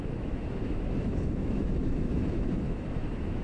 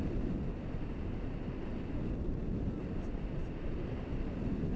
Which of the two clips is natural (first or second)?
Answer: second